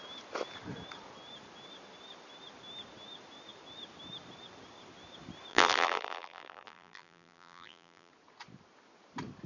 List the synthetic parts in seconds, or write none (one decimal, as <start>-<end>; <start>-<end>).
5.5-8.1